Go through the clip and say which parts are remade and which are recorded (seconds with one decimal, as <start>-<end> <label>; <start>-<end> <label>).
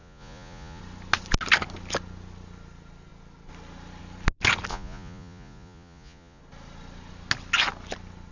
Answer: 0.0-0.8 remade; 0.8-4.7 recorded; 4.7-6.4 remade; 6.4-8.3 recorded